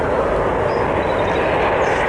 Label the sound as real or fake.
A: real